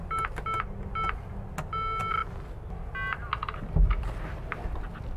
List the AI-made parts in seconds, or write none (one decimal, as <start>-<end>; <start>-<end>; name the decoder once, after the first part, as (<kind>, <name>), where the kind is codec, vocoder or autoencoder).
none